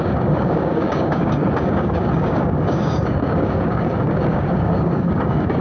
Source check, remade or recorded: remade